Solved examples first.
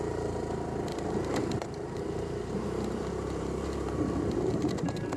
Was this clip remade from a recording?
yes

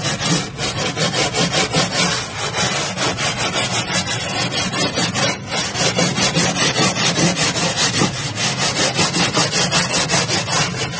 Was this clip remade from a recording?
no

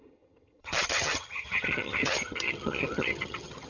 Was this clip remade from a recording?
yes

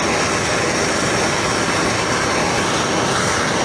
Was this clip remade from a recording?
no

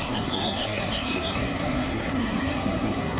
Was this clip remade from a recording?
yes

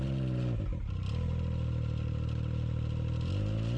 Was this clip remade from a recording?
no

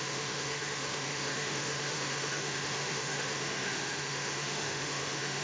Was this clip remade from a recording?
yes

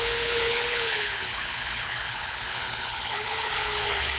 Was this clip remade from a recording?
yes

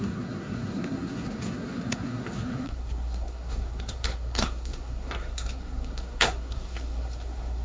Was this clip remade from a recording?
yes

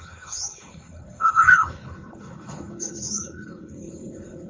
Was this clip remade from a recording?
yes